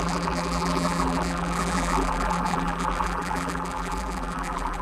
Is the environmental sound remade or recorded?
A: remade